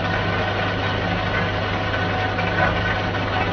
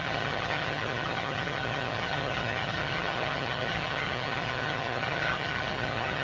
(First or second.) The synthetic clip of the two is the second